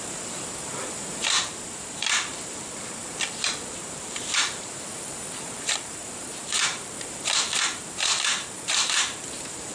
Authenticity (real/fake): fake